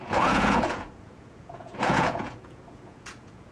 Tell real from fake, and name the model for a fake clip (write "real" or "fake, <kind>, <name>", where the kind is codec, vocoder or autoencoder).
fake, vocoder, Vocos